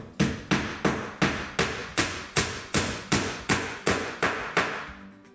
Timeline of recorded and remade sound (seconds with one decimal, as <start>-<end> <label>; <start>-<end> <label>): 0.0-1.8 recorded; 1.8-4.7 remade; 4.7-5.3 recorded